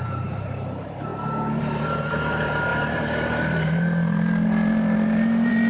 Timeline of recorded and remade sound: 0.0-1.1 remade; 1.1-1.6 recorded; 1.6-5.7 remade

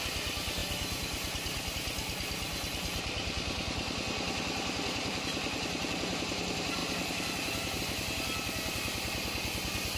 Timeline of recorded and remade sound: 0.0-6.8 recorded; 6.8-7.8 remade; 7.8-10.0 recorded

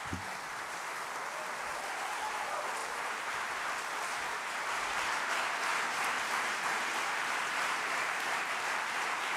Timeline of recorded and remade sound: 0.0-2.8 recorded; 2.8-4.8 remade; 4.8-5.7 recorded; 5.7-9.4 remade

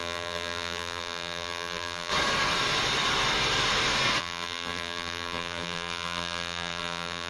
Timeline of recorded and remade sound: 0.0-2.1 remade; 2.1-4.2 recorded; 4.2-7.3 remade

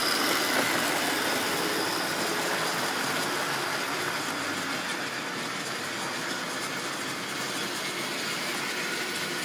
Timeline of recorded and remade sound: 0.0-4.9 recorded; 4.9-5.9 remade; 5.9-9.4 recorded

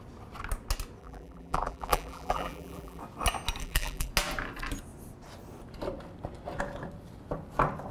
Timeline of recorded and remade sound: 0.0-1.0 recorded; 1.0-3.0 remade; 3.0-3.6 recorded; 3.6-4.1 remade; 4.1-7.9 recorded

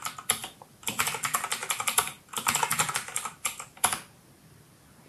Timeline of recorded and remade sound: 0.0-0.4 recorded; 0.4-1.0 remade; 1.0-1.6 recorded; 1.6-5.1 remade

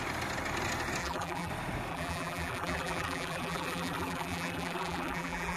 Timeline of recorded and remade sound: 0.0-1.0 recorded; 1.0-1.5 remade; 1.5-1.9 recorded; 1.9-5.6 remade